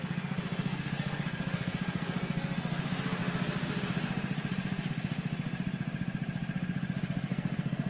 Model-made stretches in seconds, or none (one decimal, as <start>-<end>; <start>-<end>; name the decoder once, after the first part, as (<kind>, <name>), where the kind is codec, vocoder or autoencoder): 0.0-2.8 (codec, SNAC); 7.3-7.9